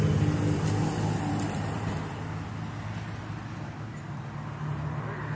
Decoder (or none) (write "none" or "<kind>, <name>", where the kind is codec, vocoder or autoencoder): none